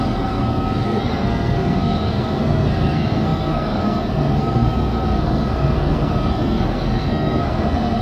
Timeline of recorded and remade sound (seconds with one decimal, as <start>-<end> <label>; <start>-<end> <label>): 0.0-8.0 remade